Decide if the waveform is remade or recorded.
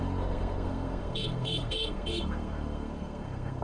remade